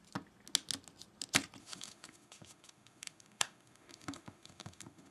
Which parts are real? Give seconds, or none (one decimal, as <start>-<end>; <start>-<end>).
0.0-1.6